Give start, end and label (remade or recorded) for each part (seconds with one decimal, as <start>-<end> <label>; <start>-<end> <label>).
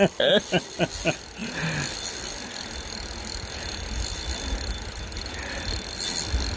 0.0-6.6 recorded